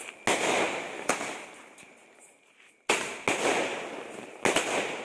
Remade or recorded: recorded